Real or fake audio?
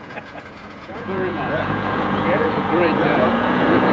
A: fake